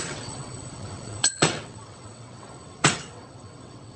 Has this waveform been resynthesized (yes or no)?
yes